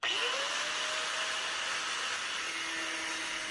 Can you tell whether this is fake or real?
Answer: real